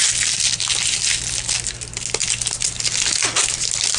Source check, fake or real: real